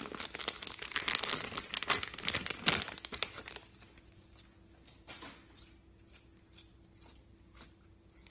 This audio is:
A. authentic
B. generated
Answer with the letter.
A